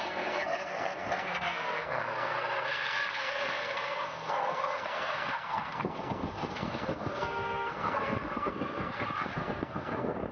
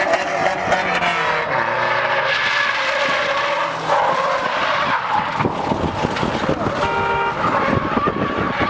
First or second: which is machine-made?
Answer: first